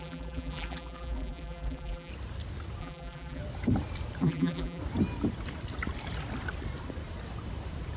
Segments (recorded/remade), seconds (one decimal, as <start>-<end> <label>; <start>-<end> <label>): 0.0-2.1 remade; 2.1-2.8 recorded; 2.8-3.4 remade; 3.4-4.2 recorded; 4.2-4.8 remade; 4.8-8.0 recorded

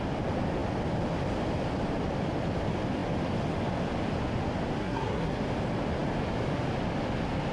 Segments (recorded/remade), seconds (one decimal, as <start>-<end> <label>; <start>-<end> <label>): 0.0-4.8 recorded; 4.8-5.4 remade; 5.4-7.5 recorded

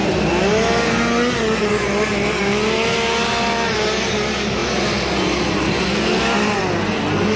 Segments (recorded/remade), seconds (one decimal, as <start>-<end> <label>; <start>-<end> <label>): 0.0-7.4 recorded

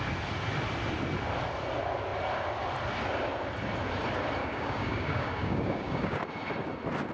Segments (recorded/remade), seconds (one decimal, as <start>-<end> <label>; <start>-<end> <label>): 0.0-4.4 recorded; 4.4-6.2 remade; 6.2-7.1 recorded